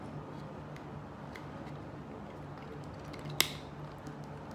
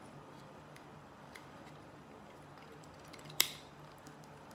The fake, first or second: second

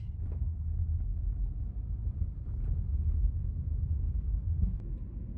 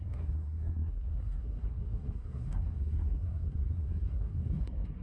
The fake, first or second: second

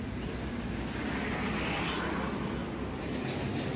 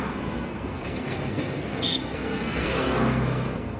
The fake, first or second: second